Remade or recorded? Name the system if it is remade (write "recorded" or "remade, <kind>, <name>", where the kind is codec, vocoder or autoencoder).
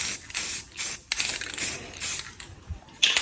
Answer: recorded